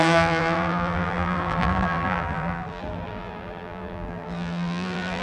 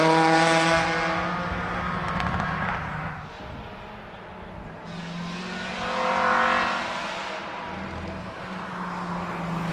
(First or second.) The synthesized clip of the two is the first